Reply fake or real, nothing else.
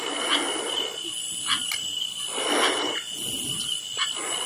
real